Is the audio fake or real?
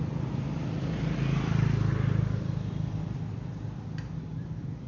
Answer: real